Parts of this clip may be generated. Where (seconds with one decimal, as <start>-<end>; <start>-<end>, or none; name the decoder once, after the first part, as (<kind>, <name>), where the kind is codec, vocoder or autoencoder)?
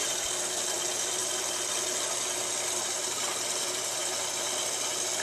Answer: none